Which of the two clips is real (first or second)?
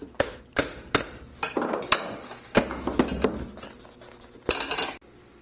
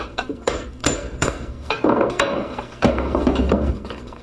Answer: first